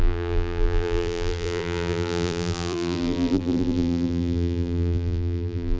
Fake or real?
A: fake